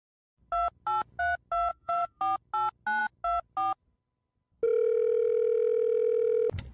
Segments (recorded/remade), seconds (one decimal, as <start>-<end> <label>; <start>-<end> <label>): 0.0-1.7 recorded; 1.7-2.2 remade; 2.2-6.7 recorded

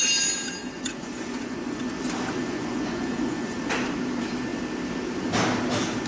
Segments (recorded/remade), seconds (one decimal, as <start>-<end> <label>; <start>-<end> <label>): 0.0-0.6 recorded; 0.6-1.9 remade; 1.9-2.4 recorded; 2.4-3.6 remade; 3.6-6.1 recorded

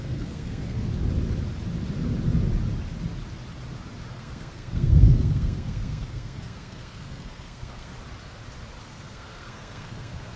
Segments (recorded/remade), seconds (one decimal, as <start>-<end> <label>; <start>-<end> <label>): 0.0-0.9 remade; 0.9-4.1 recorded; 4.1-7.9 remade; 7.9-8.8 recorded; 8.8-10.4 remade

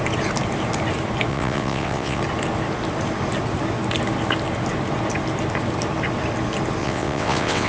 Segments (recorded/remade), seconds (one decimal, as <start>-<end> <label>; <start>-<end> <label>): 0.0-1.3 recorded; 1.3-2.2 remade; 2.2-6.8 recorded; 6.8-7.7 remade

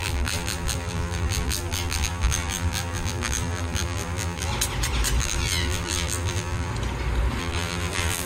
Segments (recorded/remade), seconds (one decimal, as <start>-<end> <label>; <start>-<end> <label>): 0.0-4.5 remade; 4.5-5.2 recorded; 5.2-6.7 remade; 6.7-7.4 recorded; 7.4-8.3 remade

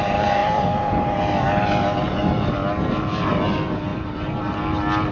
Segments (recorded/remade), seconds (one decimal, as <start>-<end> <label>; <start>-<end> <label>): 0.0-0.4 recorded; 0.4-1.2 remade; 1.2-3.9 recorded; 3.9-4.5 remade; 4.5-5.1 recorded

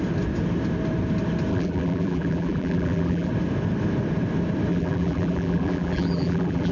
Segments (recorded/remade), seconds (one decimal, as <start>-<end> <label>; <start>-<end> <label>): 0.0-1.5 recorded; 1.5-3.3 remade; 3.3-4.7 recorded; 4.7-6.7 remade

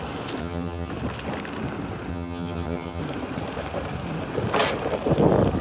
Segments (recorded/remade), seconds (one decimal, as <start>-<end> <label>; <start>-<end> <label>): 0.0-0.4 recorded; 0.4-0.9 remade; 0.9-2.1 recorded; 2.1-3.0 remade; 3.0-5.6 recorded